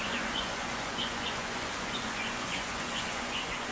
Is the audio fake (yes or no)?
yes